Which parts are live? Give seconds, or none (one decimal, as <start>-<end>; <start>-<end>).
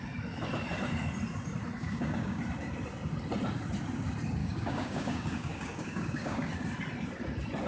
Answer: 0.0-1.8; 2.4-4.4; 6.5-7.7